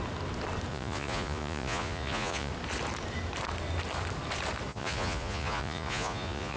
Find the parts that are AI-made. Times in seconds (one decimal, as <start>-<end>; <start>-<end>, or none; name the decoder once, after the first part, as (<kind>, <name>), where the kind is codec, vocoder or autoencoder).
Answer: 0.7-2.5 (vocoder, Vocos); 4.7-6.6